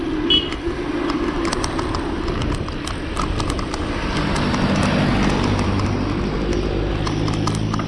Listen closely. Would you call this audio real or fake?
real